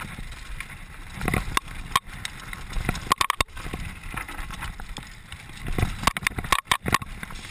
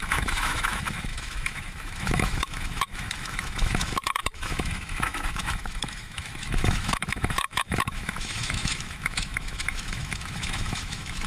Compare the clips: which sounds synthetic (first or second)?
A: second